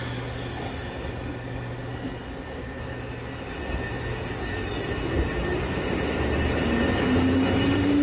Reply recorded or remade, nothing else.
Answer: recorded